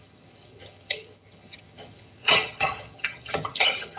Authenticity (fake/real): fake